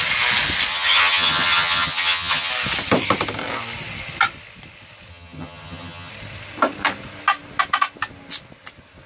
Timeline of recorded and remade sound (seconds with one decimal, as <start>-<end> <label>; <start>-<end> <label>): 0.0-0.7 recorded; 0.7-2.5 remade; 2.5-5.1 recorded; 5.1-6.1 remade; 6.1-9.1 recorded